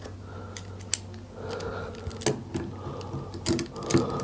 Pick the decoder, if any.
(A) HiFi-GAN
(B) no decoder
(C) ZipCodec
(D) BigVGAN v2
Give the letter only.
B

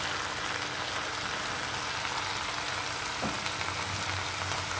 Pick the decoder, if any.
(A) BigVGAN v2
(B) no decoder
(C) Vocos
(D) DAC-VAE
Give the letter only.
B